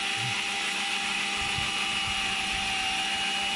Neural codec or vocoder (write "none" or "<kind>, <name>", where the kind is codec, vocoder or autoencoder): none